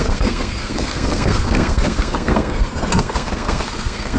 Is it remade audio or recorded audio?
remade